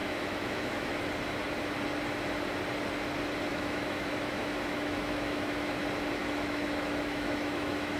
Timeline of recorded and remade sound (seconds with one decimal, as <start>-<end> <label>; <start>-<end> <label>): 0.0-0.9 remade; 0.9-3.5 recorded; 3.5-5.8 remade; 5.8-6.2 recorded; 6.2-8.0 remade